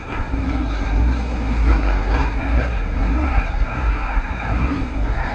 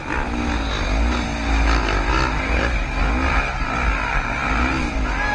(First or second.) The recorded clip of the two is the second